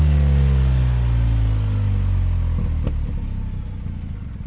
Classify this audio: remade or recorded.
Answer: recorded